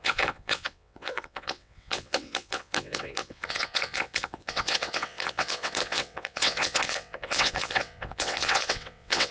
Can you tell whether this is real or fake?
fake